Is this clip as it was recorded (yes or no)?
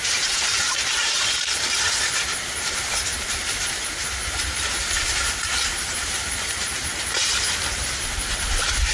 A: no